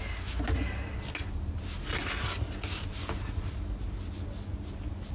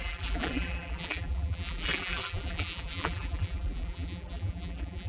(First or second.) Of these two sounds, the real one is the first